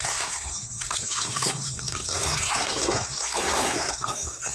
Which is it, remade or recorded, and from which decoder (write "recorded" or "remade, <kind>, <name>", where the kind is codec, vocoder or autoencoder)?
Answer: remade, codec, SNAC